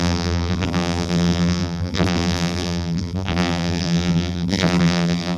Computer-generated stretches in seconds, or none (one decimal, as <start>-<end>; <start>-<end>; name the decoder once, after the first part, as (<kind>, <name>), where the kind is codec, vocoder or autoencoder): 0.0-5.4 (vocoder, BigVGAN v2)